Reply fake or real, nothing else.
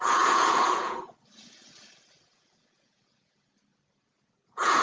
fake